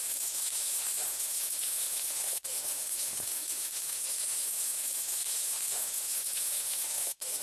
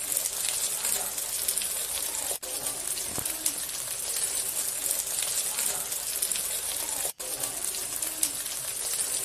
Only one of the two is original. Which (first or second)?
second